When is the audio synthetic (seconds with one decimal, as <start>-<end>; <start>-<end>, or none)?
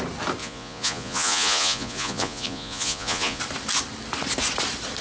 0.4-3.4